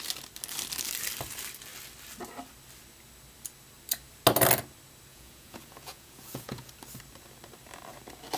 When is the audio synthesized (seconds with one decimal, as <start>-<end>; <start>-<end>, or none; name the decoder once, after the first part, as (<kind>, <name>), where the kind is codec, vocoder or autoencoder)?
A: 5.1-6.7 (vocoder, Vocos)